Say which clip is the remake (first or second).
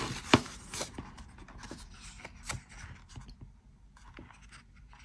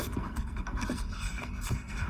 second